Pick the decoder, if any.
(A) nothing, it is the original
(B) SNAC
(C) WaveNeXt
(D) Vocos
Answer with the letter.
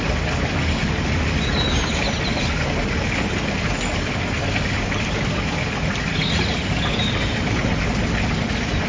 A